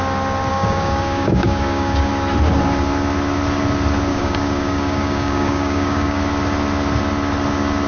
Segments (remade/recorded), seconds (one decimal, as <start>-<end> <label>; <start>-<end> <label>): 0.0-0.5 recorded; 0.5-2.1 remade; 2.1-4.1 recorded; 4.1-6.2 remade; 6.2-7.9 recorded